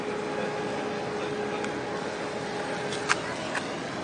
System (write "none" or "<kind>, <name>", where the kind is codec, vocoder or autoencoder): none